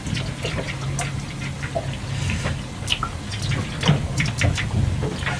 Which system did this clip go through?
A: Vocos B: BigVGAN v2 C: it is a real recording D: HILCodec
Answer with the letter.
C